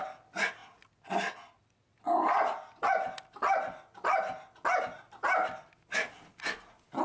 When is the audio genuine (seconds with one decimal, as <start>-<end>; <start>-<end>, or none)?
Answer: 0.0-7.0